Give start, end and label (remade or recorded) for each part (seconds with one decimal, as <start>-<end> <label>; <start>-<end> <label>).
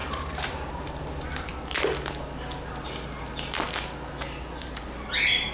0.0-1.5 remade; 1.5-4.8 recorded; 4.8-5.5 remade